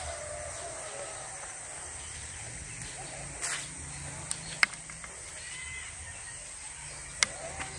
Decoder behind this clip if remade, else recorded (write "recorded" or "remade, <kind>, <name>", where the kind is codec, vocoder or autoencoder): recorded